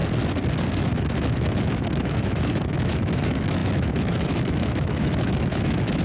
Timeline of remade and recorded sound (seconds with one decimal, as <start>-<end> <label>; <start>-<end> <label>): 0.0-0.7 recorded; 0.7-6.0 remade